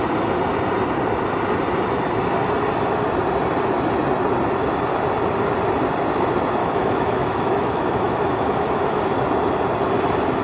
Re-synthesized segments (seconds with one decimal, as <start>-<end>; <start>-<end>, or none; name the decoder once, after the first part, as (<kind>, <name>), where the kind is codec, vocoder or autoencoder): 6.6-9.0 (autoencoder, DAC-VAE)